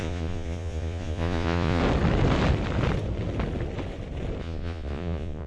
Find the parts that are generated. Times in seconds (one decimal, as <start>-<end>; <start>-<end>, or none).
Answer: 0.0-1.8; 4.4-5.5